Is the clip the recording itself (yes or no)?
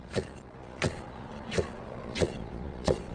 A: no